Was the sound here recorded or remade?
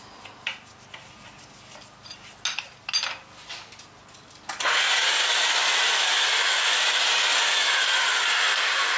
recorded